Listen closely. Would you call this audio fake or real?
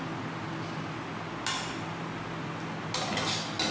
real